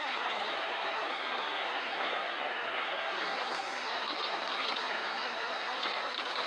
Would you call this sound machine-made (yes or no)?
yes